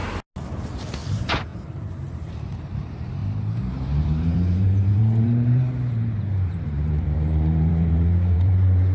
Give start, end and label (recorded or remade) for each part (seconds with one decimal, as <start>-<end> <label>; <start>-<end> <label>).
0.0-1.1 recorded; 1.1-8.9 remade